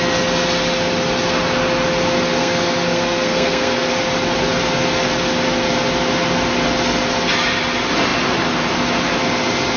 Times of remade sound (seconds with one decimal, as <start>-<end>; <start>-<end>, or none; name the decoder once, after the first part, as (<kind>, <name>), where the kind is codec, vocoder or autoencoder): 2.4-3.9 (codec, SNAC)

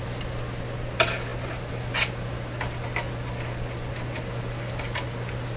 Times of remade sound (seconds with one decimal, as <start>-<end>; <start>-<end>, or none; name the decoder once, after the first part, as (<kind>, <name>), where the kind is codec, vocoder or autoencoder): none

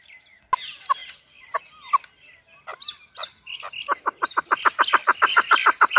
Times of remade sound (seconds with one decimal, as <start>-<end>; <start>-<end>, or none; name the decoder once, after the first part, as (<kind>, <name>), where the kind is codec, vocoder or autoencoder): none